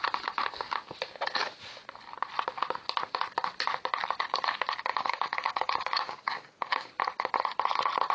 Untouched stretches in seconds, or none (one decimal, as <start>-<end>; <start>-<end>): 0.0-4.9; 6.9-8.1